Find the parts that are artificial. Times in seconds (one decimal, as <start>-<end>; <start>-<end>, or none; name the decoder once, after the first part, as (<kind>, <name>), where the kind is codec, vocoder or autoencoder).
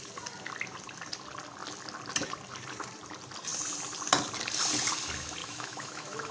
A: 5.4-6.3 (autoencoder, DAC-VAE)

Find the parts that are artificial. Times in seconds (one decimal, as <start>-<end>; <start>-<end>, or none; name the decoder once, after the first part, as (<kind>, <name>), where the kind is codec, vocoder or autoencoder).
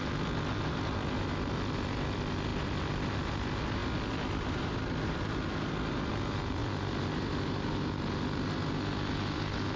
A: none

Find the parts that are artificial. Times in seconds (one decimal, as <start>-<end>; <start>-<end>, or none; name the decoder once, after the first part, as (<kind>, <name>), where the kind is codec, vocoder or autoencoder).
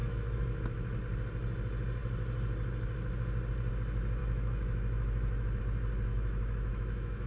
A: 0.0-1.0 (autoencoder, DAC-VAE); 4.2-5.6; 6.1-7.3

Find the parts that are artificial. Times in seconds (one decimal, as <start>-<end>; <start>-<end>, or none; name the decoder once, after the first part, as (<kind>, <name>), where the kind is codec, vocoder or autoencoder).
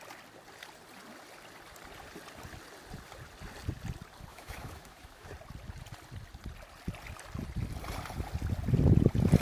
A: 4.3-5.3 (autoencoder, DAC-VAE)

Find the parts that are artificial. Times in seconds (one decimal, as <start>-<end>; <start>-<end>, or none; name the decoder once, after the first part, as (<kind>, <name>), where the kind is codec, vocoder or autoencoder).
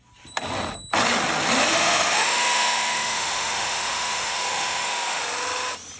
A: 1.7-5.2 (autoencoder, DAC-VAE)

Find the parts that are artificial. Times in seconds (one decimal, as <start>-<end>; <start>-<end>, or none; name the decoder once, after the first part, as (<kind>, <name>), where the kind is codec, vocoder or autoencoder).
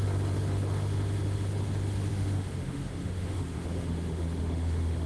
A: 2.1-5.1 (autoencoder, DAC-VAE)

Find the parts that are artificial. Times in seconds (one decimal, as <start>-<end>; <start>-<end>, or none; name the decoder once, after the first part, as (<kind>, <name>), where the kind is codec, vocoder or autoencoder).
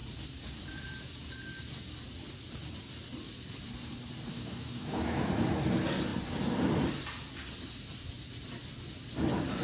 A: 4.3-5.3 (autoencoder, DAC-VAE)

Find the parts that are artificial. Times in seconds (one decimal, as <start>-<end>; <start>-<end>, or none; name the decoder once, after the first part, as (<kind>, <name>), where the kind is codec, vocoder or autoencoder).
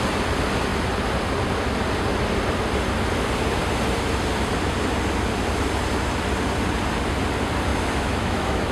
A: 7.7-8.7 (autoencoder, DAC-VAE)